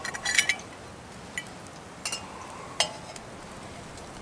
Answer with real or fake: real